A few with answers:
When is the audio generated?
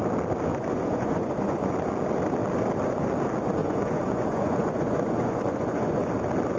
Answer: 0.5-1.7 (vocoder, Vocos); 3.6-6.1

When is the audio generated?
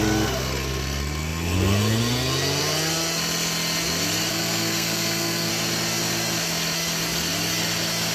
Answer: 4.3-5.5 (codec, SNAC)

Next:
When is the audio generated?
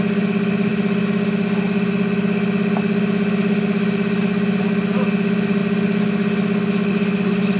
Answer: none